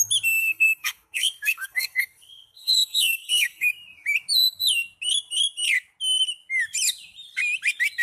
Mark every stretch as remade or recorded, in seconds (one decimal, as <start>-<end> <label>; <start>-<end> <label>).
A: 0.0-0.4 recorded; 0.4-3.7 remade; 3.7-8.0 recorded